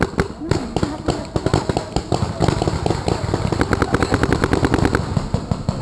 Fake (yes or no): no